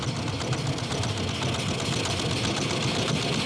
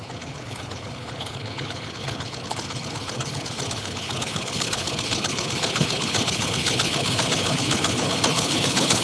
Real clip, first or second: first